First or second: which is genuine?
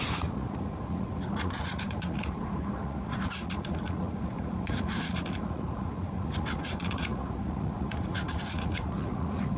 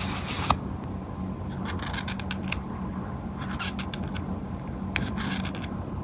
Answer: second